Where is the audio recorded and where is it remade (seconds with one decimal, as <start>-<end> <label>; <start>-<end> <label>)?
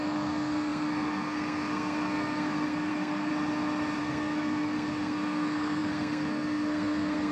0.0-3.3 remade; 3.3-4.0 recorded; 4.0-7.3 remade